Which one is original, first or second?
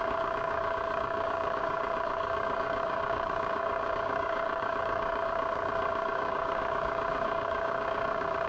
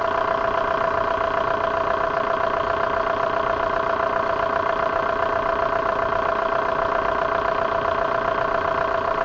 second